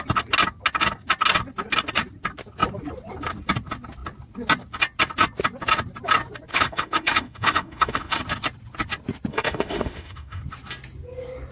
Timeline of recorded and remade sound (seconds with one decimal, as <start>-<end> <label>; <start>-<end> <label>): 0.0-6.5 recorded; 6.5-8.2 remade; 8.2-9.3 recorded; 9.3-10.4 remade; 10.4-11.5 recorded